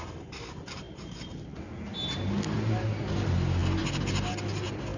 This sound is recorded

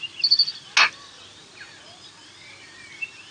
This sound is recorded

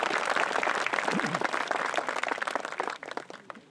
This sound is recorded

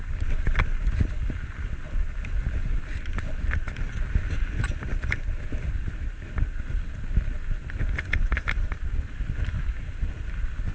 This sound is recorded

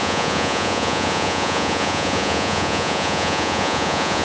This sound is remade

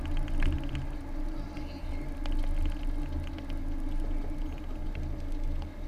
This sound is recorded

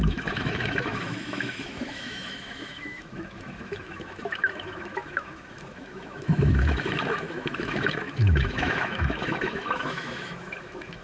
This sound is remade